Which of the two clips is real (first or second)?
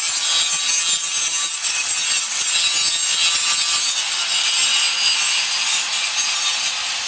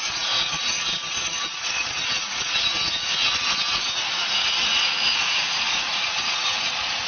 first